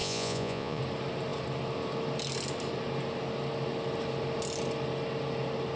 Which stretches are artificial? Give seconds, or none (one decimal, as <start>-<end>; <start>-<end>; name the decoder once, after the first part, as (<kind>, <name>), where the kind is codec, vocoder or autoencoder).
0.0-0.8 (vocoder, Vocos)